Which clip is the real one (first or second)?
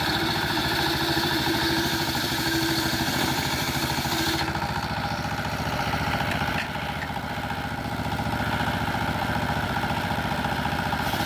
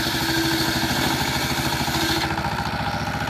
second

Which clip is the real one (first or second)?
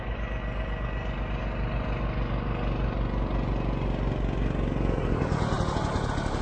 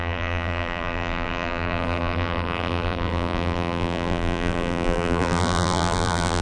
first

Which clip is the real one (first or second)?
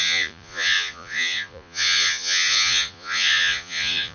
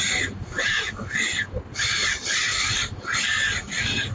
second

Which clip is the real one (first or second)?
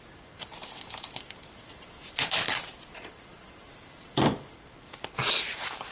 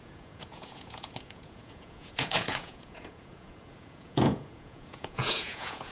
first